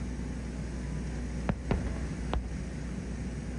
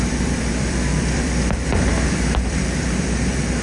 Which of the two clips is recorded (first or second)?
first